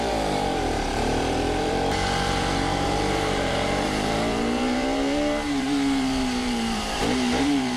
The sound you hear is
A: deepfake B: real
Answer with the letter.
A